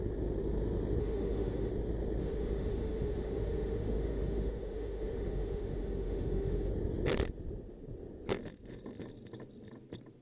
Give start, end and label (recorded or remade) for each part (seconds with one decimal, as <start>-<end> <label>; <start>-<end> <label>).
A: 0.0-1.0 recorded; 1.0-1.7 remade; 1.7-2.2 recorded; 2.2-6.7 remade; 6.7-10.2 recorded

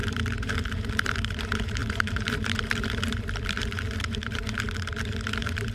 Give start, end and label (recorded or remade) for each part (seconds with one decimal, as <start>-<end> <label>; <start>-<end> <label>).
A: 0.0-5.7 remade

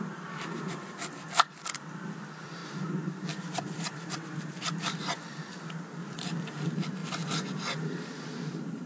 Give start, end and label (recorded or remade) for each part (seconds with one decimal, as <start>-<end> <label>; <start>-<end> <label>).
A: 0.0-2.6 remade; 2.6-3.1 recorded; 3.1-7.0 remade; 7.0-7.8 recorded; 7.8-8.9 remade

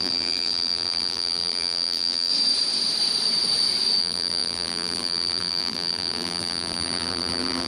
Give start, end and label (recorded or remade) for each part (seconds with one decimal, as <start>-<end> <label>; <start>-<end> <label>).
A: 0.0-2.3 remade; 2.3-4.0 recorded; 4.0-7.7 remade

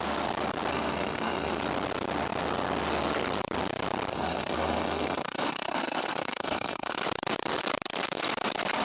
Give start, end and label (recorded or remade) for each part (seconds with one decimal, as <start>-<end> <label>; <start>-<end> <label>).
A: 0.0-0.7 recorded; 0.7-1.6 remade; 1.6-4.1 recorded; 4.1-7.0 remade; 7.0-8.8 recorded

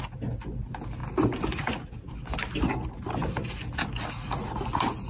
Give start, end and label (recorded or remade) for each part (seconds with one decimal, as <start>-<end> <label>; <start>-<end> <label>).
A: 0.0-5.1 recorded

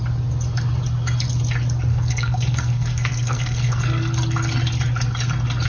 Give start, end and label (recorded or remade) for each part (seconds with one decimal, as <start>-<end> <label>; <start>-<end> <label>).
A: 0.0-1.9 recorded; 1.9-4.1 remade; 4.1-5.7 recorded

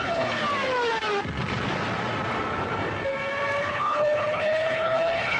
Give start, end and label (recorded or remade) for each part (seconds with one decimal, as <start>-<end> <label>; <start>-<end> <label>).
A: 0.0-0.4 remade; 0.4-3.6 recorded; 3.6-5.4 remade